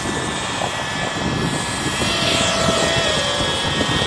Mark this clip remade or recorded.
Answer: recorded